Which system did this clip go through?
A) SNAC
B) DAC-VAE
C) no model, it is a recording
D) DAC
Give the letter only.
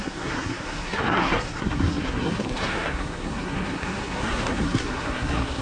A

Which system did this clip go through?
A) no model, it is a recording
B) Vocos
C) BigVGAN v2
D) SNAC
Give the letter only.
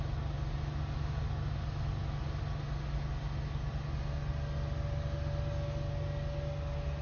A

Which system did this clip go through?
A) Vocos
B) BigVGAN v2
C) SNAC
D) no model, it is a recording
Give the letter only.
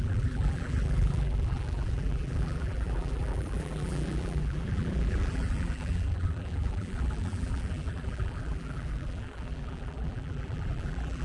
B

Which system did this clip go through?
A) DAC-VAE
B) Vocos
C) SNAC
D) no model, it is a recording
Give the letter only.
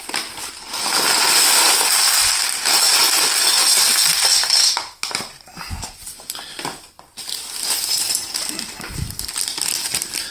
D